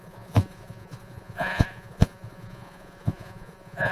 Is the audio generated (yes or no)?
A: yes